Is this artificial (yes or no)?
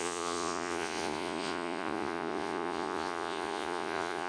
yes